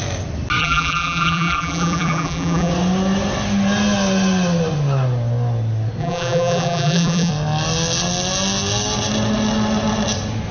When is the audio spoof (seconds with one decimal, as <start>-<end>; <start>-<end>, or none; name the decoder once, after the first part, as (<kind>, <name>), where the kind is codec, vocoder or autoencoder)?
0.6-2.7 (vocoder, BigVGAN v2); 6.0-7.3